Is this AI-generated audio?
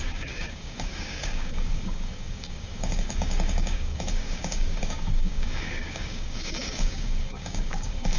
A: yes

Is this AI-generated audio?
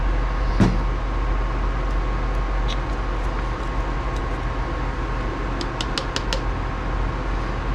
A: no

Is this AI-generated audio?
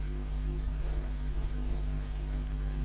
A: yes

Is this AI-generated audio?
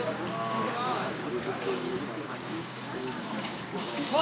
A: yes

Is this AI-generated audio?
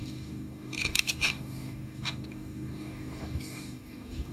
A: yes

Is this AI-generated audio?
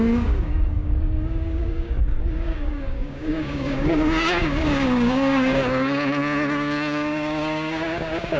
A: yes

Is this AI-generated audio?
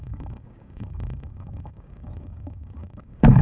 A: yes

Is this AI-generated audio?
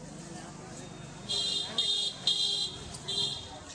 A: no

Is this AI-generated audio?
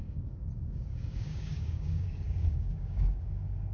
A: yes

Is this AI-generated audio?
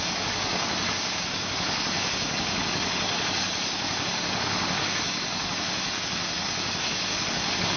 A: yes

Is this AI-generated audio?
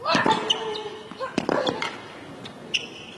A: no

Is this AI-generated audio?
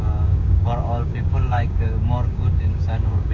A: yes